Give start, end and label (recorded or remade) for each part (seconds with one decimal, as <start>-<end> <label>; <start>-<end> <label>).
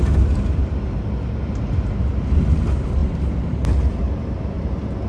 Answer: 0.0-5.1 recorded